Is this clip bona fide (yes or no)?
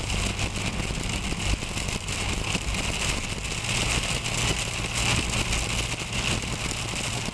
yes